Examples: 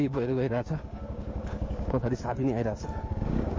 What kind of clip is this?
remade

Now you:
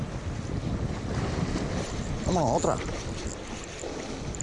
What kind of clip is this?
recorded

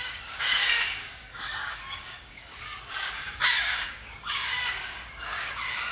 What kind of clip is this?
remade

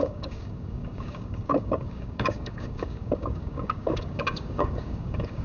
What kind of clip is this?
remade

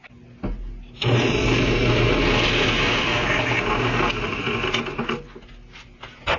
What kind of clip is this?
recorded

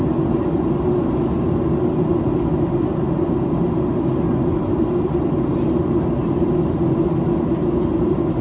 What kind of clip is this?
recorded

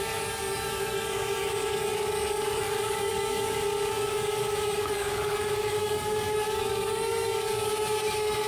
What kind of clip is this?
remade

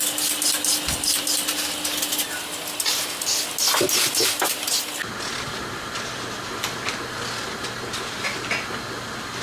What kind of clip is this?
recorded